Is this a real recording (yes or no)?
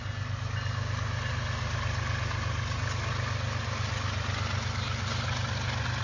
yes